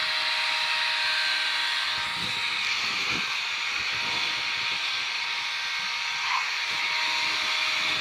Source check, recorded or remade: recorded